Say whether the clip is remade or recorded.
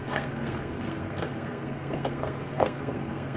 remade